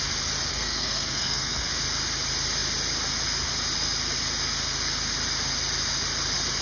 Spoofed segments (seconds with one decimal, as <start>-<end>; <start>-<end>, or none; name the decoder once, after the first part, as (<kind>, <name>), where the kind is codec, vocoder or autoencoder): 0.5-1.7 (codec, SNAC)

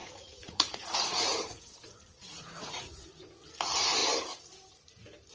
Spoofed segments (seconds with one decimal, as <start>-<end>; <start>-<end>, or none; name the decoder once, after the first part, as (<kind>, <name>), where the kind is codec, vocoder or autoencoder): 0.0-3.2 (vocoder, Vocos)

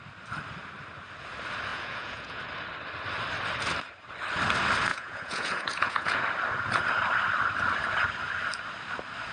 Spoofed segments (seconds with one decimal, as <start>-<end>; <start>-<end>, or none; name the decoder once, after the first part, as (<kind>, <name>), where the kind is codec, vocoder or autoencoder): 1.7-2.4 (vocoder, Vocos); 4.9-6.2

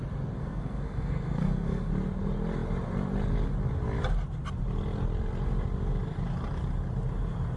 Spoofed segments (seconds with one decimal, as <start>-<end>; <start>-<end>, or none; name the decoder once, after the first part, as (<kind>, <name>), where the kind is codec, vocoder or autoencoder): 0.4-1.9 (codec, SNAC)

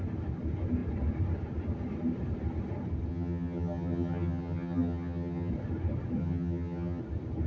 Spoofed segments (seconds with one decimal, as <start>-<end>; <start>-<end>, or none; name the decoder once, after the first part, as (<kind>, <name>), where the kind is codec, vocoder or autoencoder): 3.1-5.5 (vocoder, HiFi-GAN); 6.2-7.0

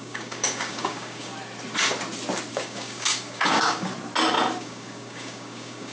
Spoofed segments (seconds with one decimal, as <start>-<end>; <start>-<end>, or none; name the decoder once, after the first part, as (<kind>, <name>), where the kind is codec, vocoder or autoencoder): 0.0-1.3 (codec, DAC); 2.5-3.9; 4.6-5.9

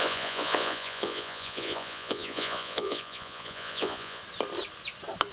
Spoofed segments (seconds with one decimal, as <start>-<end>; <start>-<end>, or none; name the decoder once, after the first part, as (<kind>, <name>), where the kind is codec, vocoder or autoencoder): 0.0-4.2 (vocoder, Vocos)

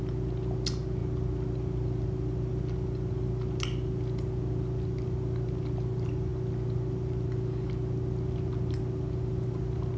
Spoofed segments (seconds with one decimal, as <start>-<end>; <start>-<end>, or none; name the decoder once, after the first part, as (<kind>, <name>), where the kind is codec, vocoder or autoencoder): none